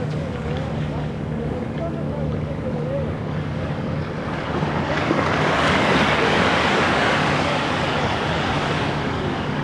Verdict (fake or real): fake